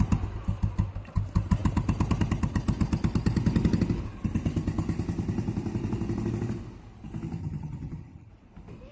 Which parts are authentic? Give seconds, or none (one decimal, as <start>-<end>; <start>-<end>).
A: 0.0-7.4; 8.3-8.9